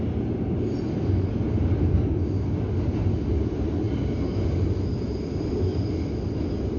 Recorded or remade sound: recorded